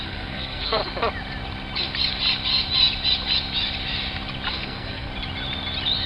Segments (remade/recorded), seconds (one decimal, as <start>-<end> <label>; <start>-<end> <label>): 0.0-0.8 remade; 0.8-4.5 recorded; 4.5-5.1 remade; 5.1-6.1 recorded